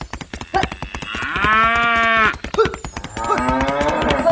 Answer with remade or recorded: recorded